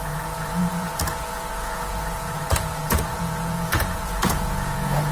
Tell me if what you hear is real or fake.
fake